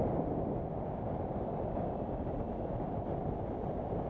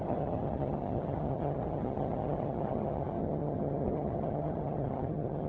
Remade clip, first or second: second